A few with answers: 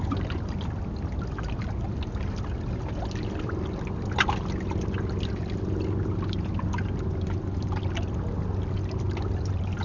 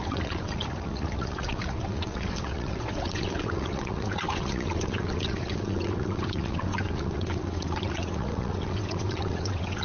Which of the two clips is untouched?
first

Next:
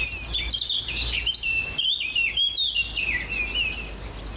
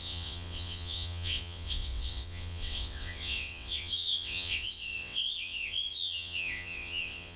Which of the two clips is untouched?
first